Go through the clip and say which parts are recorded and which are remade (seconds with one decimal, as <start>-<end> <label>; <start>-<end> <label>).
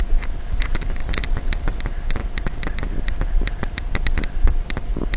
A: 0.0-1.0 remade; 1.0-1.8 recorded; 1.8-5.2 remade